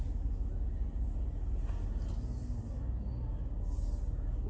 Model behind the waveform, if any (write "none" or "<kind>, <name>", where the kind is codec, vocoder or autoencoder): none